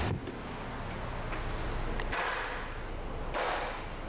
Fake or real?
real